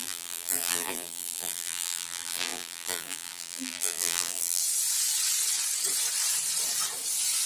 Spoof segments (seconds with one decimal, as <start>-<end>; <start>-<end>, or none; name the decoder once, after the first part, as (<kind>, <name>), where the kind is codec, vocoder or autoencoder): 0.0-4.6 (vocoder, BigVGAN v2)